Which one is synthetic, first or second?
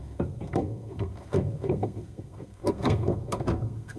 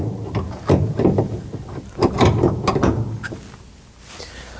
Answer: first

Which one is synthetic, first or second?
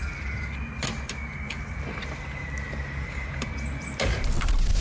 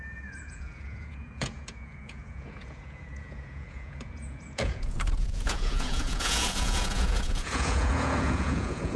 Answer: second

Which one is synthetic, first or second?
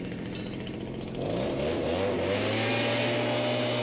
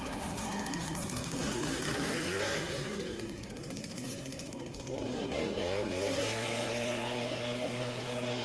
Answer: second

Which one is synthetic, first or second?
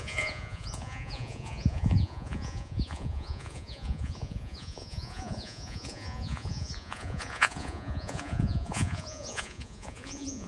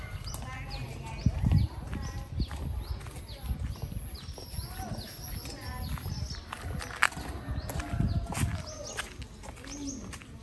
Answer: first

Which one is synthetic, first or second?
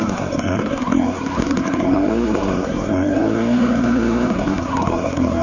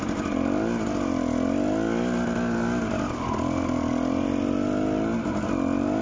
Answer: first